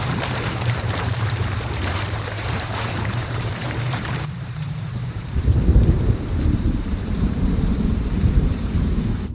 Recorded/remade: remade